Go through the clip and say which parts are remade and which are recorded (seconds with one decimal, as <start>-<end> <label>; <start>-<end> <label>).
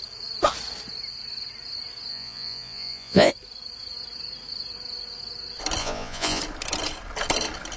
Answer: 0.0-2.1 recorded; 2.1-3.3 remade; 3.3-5.8 recorded; 5.8-6.4 remade; 6.4-7.8 recorded